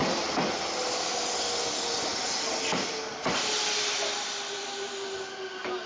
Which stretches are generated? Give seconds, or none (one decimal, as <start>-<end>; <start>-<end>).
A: none